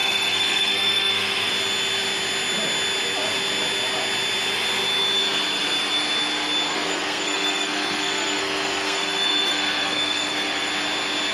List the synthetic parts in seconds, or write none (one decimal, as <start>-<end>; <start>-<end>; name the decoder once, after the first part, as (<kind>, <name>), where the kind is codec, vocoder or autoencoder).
0.0-1.5 (codec, SNAC); 6.7-10.7